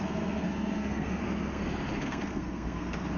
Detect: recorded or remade remade